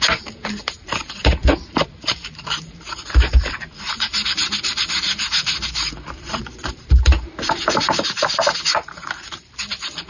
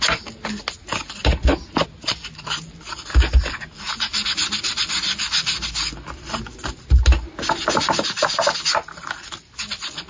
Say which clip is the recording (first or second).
second